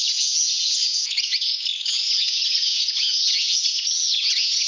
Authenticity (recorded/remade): remade